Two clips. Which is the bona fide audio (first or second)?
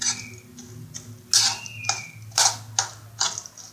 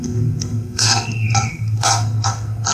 first